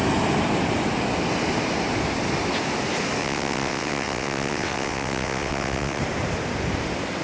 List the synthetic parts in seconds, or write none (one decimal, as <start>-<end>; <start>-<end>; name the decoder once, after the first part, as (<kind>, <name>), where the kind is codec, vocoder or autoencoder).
3.2-6.0 (vocoder, WaveNeXt)